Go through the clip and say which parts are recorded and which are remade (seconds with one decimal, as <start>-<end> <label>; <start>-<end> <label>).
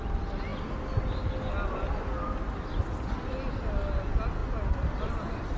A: 0.0-2.8 recorded; 2.8-3.4 remade; 3.4-4.4 recorded; 4.4-5.6 remade